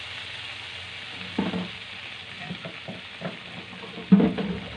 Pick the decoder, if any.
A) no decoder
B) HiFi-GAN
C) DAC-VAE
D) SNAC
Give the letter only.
A